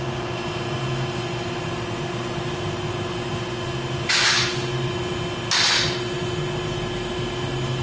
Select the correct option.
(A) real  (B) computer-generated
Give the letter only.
A